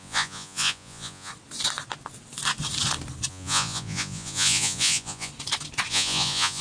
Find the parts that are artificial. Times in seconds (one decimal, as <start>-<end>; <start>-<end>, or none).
0.0-1.3; 3.3-5.3; 5.9-6.6